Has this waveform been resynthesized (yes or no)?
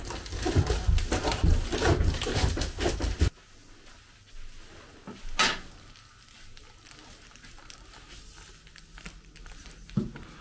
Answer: no